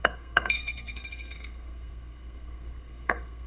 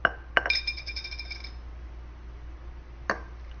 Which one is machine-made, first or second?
first